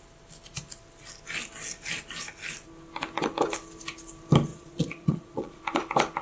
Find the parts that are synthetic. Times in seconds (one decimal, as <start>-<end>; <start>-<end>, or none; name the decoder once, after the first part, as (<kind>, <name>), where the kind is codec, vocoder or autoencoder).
4.5-5.6 (vocoder, Vocos)